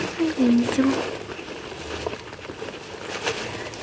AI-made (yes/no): no